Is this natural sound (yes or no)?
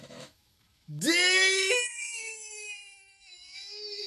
no